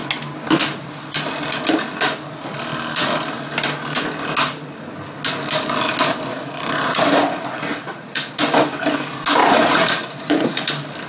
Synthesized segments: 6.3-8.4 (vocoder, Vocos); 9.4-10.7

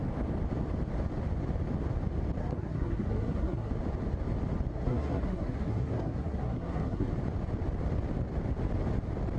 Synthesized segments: 2.4-3.7 (codec, SNAC); 4.7-7.1